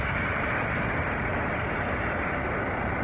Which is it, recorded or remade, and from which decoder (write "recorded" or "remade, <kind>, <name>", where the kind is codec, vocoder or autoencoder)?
remade, vocoder, BigVGAN v2